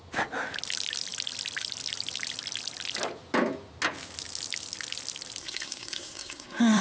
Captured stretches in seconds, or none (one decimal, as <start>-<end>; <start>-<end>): 0.0-5.4